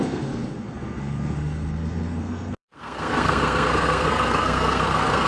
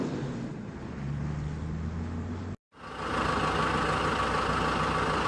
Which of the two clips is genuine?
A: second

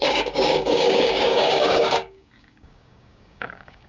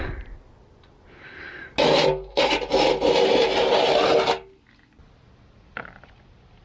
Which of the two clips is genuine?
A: second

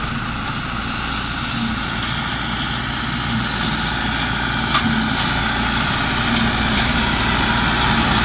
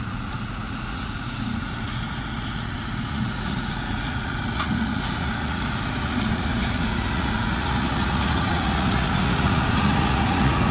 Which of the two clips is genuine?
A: first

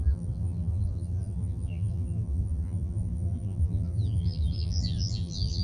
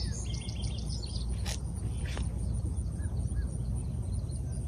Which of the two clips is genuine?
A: second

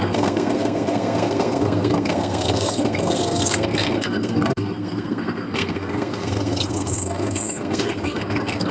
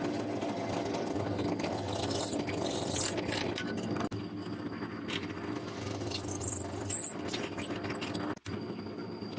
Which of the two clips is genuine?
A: second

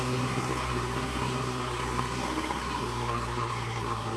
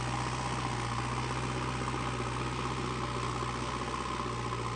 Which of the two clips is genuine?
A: second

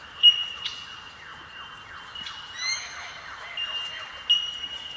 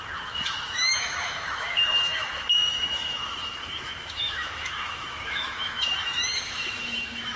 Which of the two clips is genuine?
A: first